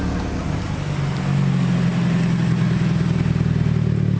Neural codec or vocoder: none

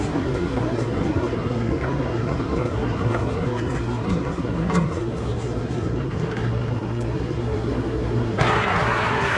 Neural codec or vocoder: codec, SNAC